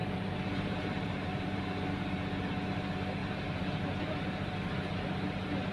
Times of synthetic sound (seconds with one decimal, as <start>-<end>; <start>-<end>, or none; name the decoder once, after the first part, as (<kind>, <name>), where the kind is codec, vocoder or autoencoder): 0.0-1.6 (vocoder, BigVGAN v2); 3.2-3.8

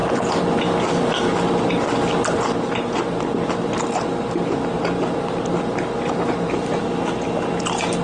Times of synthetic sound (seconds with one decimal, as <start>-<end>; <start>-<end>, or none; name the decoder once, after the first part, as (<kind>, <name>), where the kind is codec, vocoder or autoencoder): none

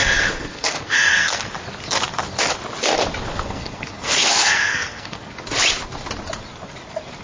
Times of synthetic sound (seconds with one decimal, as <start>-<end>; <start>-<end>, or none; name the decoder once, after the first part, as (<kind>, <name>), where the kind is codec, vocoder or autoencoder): 0.0-1.5 (codec, SNAC); 3.3-5.2